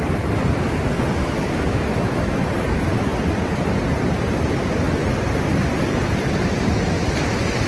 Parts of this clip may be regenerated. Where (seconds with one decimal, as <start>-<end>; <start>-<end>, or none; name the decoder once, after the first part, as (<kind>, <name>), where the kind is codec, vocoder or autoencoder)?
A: 1.2-2.5 (autoencoder, DAC-VAE)